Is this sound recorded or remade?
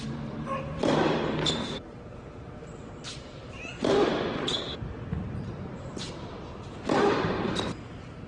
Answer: remade